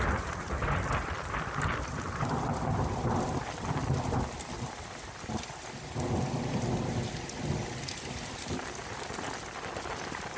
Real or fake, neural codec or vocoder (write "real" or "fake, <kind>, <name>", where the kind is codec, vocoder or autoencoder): real